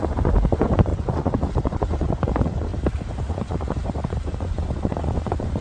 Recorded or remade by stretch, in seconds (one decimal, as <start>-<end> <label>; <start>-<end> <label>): 0.0-2.7 remade; 2.7-3.2 recorded; 3.2-5.6 remade